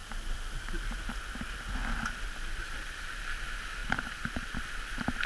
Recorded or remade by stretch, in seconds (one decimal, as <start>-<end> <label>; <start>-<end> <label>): 0.0-3.8 recorded; 3.8-4.6 remade; 4.6-5.3 recorded